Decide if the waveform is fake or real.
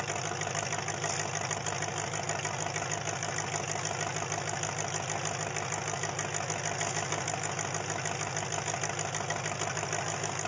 real